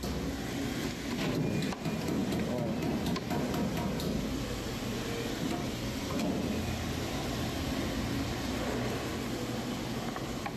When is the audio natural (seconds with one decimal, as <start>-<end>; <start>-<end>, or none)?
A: 0.0-10.6